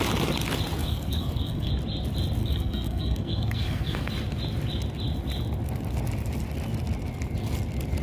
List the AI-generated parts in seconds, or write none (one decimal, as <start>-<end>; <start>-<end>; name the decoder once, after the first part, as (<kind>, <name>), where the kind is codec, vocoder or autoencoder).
0.8-1.7 (codec, SNAC); 2.4-4.1